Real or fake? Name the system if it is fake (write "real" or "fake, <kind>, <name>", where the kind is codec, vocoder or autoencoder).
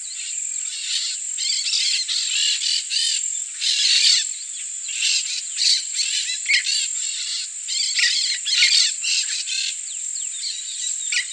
real